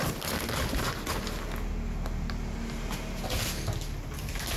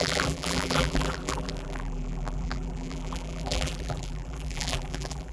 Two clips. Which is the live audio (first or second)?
first